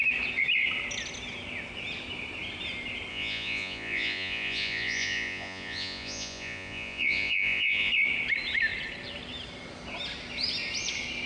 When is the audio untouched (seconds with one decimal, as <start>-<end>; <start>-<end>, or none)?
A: 0.0-3.1; 7.9-11.3